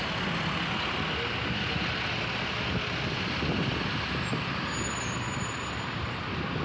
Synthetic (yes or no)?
no